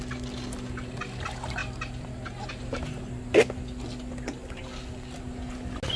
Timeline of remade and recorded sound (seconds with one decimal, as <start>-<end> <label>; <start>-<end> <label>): 0.0-6.0 recorded